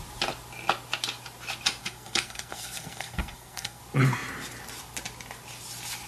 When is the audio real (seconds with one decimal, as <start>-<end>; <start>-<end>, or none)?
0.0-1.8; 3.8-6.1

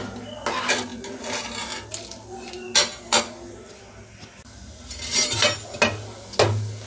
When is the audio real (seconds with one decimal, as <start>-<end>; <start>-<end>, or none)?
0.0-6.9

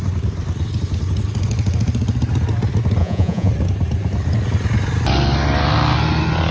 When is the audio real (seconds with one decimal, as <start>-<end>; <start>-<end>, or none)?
0.0-3.0; 3.5-6.5